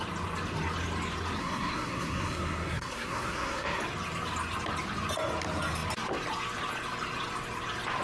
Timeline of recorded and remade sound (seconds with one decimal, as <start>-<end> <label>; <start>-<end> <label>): 0.0-1.4 recorded; 1.4-3.8 remade; 3.8-8.0 recorded